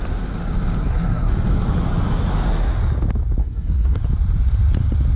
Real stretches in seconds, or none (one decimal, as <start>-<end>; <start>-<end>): 0.0-0.8; 1.3-3.4; 4.0-5.2